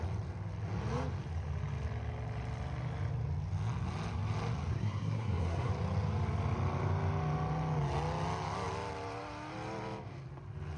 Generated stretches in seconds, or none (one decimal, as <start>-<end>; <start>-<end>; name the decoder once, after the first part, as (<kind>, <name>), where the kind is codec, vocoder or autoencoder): 4.7-5.7 (codec, SNAC)